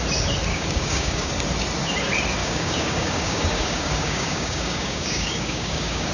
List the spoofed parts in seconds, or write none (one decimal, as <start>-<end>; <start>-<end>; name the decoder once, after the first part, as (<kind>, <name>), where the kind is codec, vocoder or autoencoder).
0.5-1.3 (codec, DAC); 2.4-6.1